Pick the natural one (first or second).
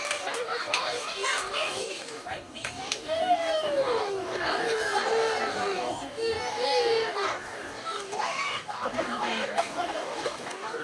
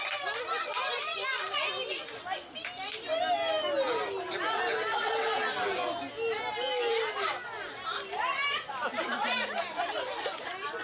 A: second